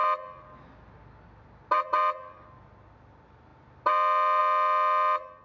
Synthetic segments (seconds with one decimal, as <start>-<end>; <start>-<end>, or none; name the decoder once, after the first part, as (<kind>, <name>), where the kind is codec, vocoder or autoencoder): none